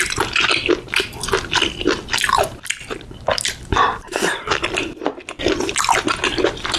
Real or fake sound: fake